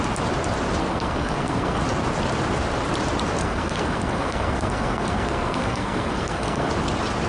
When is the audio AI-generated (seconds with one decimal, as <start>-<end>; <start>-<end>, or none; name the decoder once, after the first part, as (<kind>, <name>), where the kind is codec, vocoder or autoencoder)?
0.8-1.8 (codec, SNAC); 3.4-6.7